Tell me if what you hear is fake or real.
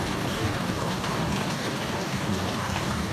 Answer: fake